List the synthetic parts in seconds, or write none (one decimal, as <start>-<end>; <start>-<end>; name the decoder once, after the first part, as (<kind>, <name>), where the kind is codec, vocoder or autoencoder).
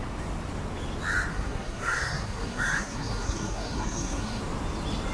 1.3-4.4 (codec, SNAC)